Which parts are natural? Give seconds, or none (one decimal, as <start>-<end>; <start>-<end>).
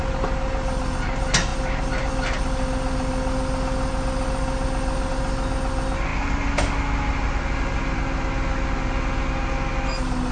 0.0-10.3